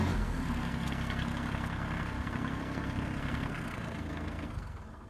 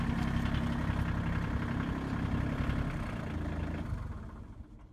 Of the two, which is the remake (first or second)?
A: first